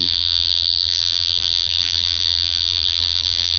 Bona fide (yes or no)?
no